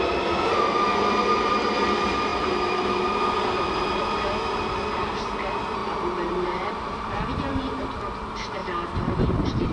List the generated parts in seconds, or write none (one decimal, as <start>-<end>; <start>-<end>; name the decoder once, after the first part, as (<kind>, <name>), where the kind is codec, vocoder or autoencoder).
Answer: 2.3-3.0 (vocoder, BigVGAN v2); 5.8-7.0